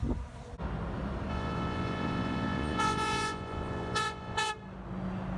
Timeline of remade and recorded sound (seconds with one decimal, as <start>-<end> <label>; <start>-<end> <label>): 0.0-1.3 recorded; 1.3-4.5 remade; 4.5-5.4 recorded